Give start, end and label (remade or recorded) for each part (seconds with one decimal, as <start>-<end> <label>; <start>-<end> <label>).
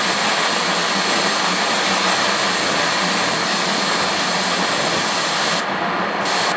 0.0-6.6 recorded